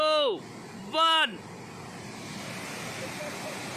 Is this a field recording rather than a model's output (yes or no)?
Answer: yes